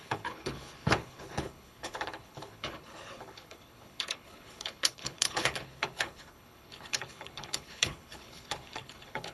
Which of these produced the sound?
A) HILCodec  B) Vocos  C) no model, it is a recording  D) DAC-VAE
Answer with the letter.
A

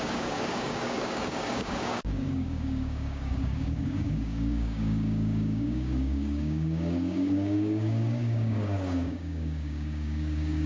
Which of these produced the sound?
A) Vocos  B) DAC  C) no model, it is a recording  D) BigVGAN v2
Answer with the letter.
B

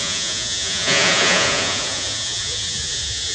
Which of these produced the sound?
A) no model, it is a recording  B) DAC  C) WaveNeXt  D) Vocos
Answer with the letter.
D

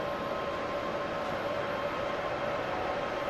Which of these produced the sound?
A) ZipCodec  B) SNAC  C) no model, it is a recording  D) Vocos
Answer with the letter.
C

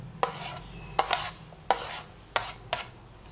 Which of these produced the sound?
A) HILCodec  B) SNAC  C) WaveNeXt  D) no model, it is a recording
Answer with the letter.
D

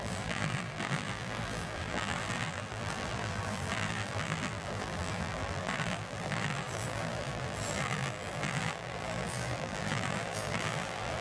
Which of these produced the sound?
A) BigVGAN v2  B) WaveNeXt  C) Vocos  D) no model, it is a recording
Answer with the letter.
A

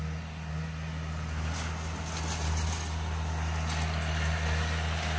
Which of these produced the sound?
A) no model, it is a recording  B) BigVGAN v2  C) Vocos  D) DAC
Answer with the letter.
A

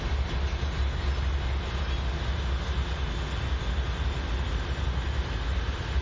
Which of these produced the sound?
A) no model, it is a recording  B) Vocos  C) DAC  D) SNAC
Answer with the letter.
A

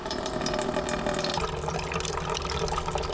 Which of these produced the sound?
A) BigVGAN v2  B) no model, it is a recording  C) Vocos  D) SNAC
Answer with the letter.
B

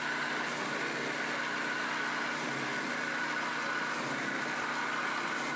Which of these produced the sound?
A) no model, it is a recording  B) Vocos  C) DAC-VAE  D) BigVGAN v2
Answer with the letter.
A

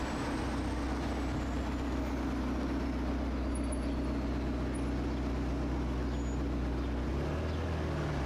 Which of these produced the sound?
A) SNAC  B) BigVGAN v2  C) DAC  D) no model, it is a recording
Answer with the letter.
D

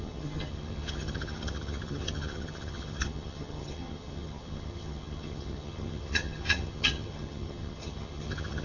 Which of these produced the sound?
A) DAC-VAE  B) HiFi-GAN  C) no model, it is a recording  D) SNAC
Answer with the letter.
B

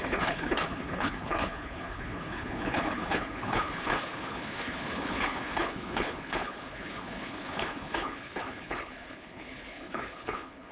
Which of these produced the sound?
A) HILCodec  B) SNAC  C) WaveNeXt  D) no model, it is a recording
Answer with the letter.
A